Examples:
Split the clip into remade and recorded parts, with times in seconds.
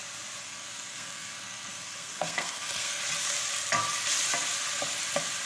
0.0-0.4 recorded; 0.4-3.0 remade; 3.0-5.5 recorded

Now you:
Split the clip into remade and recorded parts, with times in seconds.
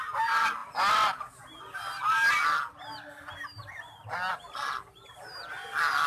0.0-6.1 recorded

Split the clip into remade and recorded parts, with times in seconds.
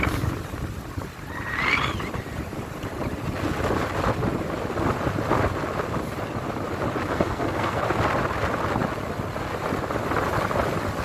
0.0-7.1 recorded; 7.1-7.8 remade; 7.8-11.0 recorded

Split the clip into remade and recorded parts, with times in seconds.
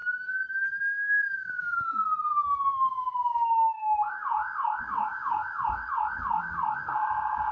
0.0-0.8 recorded; 0.8-1.9 remade; 1.9-2.7 recorded; 2.7-7.5 remade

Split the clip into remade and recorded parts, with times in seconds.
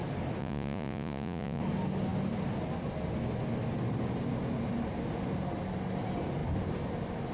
0.0-0.4 recorded; 0.4-1.6 remade; 1.6-7.3 recorded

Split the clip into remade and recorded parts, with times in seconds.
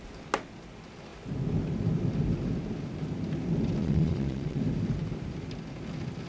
0.0-3.8 recorded; 3.8-4.6 remade; 4.6-6.3 recorded